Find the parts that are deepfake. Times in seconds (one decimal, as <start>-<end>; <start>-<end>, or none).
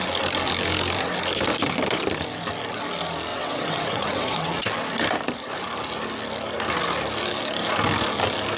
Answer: 3.3-4.7